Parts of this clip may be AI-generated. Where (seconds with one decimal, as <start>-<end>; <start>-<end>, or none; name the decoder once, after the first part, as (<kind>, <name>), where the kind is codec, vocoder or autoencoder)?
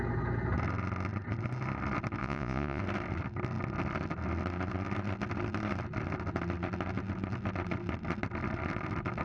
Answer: 2.2-2.8 (vocoder, Vocos)